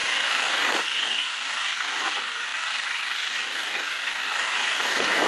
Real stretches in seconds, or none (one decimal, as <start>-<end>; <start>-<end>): none